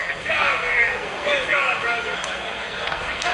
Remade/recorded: remade